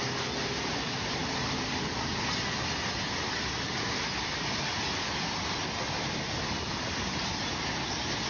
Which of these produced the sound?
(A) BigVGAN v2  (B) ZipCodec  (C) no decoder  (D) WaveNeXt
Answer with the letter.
C